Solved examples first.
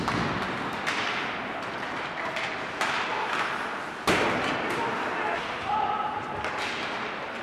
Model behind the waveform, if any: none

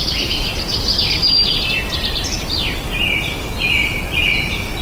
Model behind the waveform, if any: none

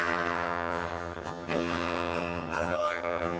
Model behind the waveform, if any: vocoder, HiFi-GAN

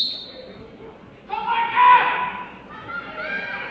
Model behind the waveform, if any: none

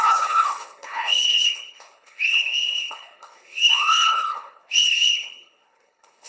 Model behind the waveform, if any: codec, HILCodec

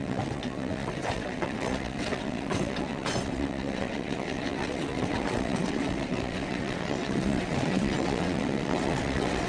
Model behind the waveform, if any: vocoder, WaveNeXt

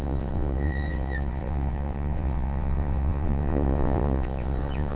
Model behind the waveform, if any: vocoder, WaveNeXt